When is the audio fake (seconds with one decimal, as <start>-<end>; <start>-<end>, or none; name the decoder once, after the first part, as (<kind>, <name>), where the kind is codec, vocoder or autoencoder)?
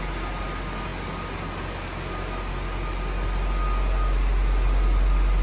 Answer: none